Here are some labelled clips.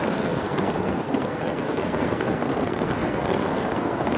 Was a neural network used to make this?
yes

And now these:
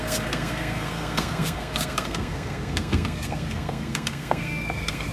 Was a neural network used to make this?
yes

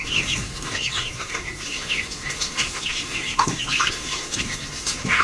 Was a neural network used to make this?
yes